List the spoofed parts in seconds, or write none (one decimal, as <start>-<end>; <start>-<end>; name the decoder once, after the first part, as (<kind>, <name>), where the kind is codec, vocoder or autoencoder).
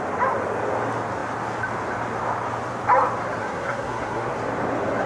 3.4-4.3 (codec, SNAC)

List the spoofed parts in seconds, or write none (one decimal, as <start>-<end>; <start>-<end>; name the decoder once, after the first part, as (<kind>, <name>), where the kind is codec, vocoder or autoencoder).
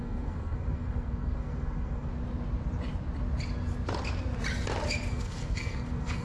0.0-2.1 (codec, SNAC); 5.1-6.2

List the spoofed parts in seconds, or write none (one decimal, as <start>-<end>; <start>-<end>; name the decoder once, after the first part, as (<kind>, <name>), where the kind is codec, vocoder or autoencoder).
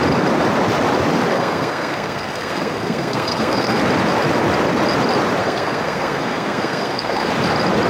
1.3-3.8 (codec, SNAC); 5.4-7.3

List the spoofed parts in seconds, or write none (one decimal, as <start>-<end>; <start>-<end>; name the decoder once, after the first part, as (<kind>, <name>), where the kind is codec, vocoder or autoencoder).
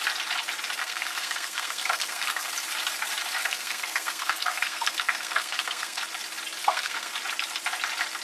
0.8-2.5 (codec, SNAC); 3.4-6.0; 6.6-7.1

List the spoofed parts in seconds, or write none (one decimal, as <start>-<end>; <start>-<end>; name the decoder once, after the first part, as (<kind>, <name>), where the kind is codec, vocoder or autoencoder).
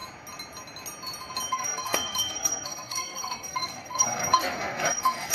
1.5-5.3 (codec, SNAC)